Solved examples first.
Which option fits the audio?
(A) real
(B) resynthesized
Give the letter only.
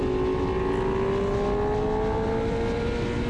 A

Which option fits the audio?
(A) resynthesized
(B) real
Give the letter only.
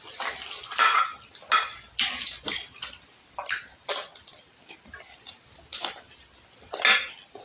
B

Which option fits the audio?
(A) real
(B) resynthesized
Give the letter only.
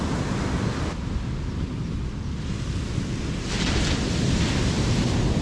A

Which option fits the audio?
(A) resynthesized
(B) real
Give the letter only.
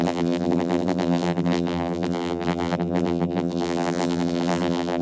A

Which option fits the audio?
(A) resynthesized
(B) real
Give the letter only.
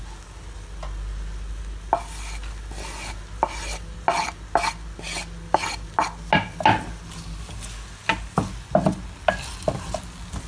B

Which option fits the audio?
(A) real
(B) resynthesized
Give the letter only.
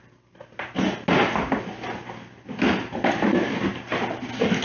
A